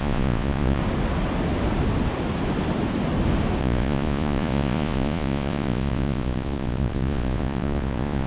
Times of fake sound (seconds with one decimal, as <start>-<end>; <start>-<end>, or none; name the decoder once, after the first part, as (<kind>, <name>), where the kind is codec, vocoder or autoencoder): 0.0-0.8 (vocoder, Vocos); 3.6-8.3